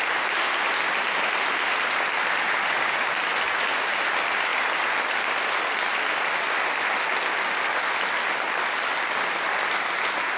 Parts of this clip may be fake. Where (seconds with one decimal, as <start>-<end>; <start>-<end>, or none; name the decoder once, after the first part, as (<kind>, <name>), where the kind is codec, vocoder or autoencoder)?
none